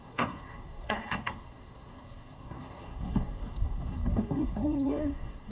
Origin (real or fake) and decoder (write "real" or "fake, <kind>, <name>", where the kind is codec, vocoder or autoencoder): fake, codec, SNAC